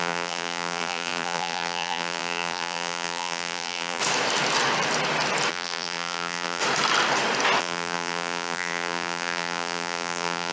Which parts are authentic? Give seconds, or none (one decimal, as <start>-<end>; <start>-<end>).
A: 4.0-5.5; 6.6-7.6